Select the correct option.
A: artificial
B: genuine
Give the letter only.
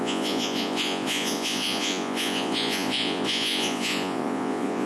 A